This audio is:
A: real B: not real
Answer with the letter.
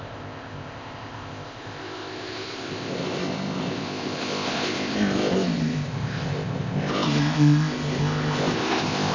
B